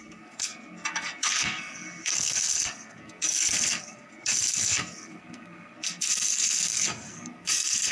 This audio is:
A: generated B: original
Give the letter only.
A